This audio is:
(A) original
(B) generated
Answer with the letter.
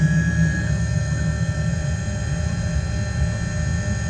A